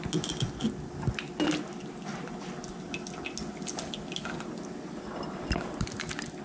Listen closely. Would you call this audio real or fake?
real